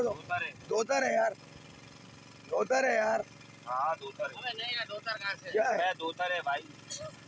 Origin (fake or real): real